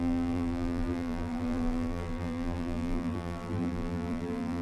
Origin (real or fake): fake